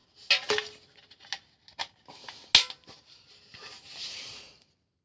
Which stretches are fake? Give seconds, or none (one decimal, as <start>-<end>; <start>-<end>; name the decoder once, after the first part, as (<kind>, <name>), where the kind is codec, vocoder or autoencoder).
none